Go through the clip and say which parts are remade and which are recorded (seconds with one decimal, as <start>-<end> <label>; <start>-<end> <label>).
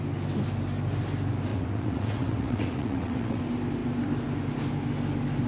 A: 0.0-1.5 recorded; 1.5-3.4 remade; 3.4-5.5 recorded